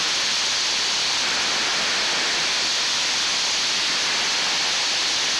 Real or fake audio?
fake